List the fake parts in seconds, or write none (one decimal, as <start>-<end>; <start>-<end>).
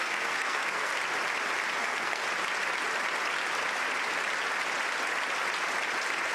0.0-0.9; 1.8-2.2